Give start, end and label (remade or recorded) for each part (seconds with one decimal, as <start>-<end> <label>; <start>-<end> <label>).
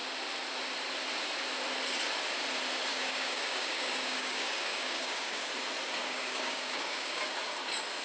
0.0-2.9 recorded; 2.9-5.5 remade; 5.5-6.0 recorded; 6.0-7.2 remade; 7.2-8.0 recorded